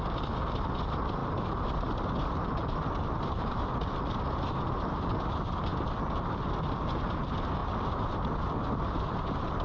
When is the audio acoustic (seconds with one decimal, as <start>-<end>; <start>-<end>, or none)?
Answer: 0.0-9.6